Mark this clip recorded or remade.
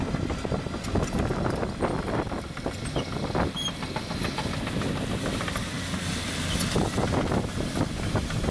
recorded